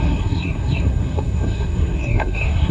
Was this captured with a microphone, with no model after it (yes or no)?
no